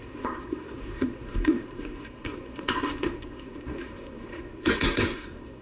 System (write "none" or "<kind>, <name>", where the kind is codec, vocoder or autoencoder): codec, SNAC